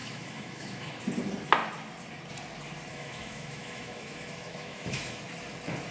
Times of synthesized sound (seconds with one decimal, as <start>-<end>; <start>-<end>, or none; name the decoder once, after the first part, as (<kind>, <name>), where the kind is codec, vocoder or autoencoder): 0.0-1.0 (autoencoder, DAC-VAE); 2.9-5.2